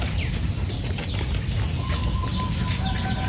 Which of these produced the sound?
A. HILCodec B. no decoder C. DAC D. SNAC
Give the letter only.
B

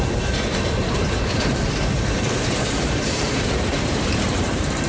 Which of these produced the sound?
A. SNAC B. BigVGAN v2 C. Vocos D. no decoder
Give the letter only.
B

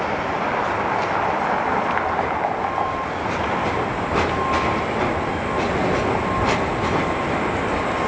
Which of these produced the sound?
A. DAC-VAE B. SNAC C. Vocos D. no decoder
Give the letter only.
D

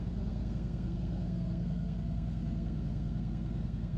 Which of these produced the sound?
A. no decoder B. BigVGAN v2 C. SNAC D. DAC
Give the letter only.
C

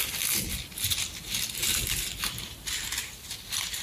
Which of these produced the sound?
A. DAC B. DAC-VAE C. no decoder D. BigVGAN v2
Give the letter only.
C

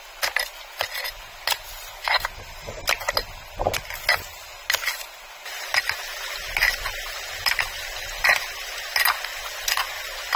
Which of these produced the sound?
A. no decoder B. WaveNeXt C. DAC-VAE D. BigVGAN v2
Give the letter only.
A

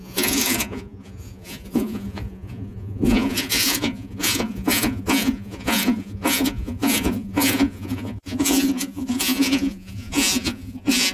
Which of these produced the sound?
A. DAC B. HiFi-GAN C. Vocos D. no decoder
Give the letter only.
C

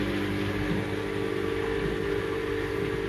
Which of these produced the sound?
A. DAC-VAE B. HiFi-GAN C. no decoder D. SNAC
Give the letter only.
C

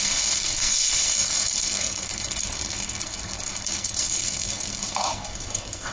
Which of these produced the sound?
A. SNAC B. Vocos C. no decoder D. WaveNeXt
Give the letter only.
A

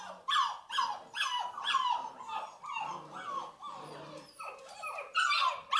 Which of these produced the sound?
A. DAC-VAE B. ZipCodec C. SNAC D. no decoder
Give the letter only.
D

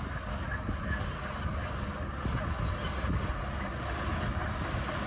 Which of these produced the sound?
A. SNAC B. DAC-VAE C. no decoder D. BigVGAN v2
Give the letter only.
C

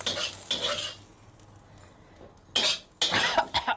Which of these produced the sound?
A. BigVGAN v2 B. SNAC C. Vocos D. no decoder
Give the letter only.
D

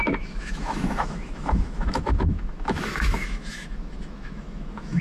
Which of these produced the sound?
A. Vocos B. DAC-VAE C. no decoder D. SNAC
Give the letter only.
B